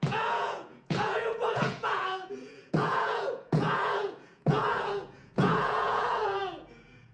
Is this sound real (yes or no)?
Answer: no